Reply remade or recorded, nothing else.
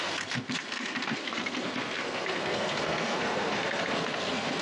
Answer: remade